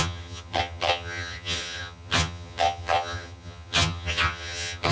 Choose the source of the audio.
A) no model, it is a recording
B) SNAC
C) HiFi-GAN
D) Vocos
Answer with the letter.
C